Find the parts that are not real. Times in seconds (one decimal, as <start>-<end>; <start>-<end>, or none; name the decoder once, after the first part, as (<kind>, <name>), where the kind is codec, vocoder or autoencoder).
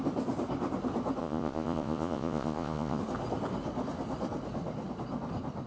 1.2-3.0 (vocoder, Vocos)